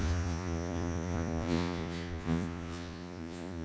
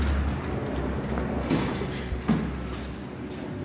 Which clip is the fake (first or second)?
first